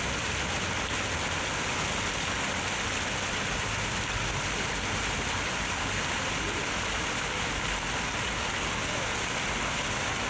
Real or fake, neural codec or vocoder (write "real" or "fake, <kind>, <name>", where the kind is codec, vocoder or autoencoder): real